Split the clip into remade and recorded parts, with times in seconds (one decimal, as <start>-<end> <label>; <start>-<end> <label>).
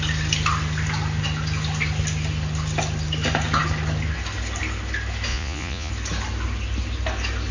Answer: 0.0-5.3 recorded; 5.3-5.9 remade; 5.9-7.5 recorded